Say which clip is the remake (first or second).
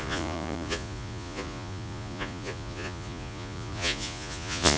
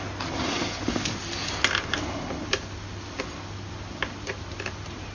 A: first